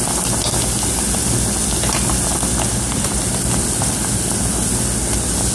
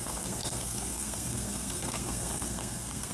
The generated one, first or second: second